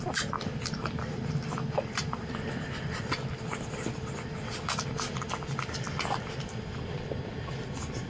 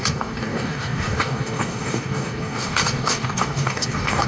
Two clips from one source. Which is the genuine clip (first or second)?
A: first